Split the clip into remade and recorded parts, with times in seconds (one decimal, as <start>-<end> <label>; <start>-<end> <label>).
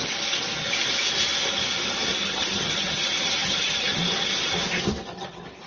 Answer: 0.0-2.1 recorded; 2.1-3.0 remade; 3.0-3.4 recorded; 3.4-4.0 remade; 4.0-5.7 recorded